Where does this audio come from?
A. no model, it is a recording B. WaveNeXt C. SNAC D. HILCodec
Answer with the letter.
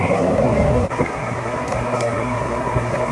C